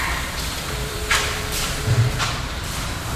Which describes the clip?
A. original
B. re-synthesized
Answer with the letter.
B